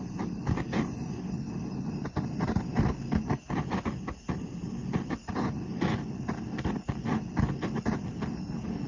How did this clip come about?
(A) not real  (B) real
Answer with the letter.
B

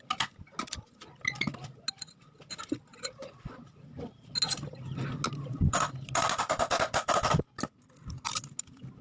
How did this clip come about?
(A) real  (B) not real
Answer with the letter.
A